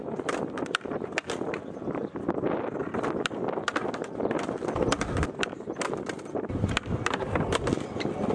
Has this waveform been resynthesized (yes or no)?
no